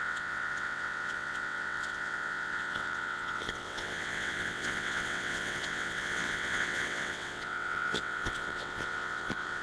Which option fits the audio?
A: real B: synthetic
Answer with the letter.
B